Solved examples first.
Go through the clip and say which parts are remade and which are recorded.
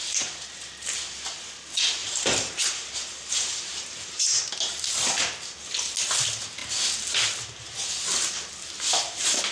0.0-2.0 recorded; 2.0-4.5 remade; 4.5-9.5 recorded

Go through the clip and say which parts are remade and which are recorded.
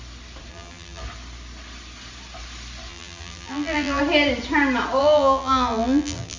0.0-0.5 recorded; 0.5-1.0 remade; 1.0-2.9 recorded; 2.9-4.0 remade; 4.0-5.0 recorded; 5.0-6.4 remade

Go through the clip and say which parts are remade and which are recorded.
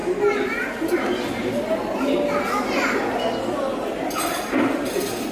0.0-5.3 recorded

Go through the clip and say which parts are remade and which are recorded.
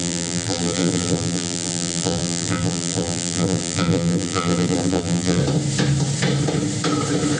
0.0-5.4 remade; 5.4-7.4 recorded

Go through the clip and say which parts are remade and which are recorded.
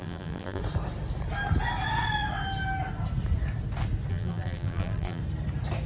0.0-0.6 remade; 0.6-4.1 recorded; 4.1-5.2 remade; 5.2-5.9 recorded